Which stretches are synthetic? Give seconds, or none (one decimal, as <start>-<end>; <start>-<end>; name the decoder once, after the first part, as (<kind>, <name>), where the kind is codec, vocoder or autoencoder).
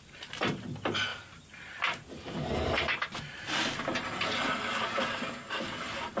none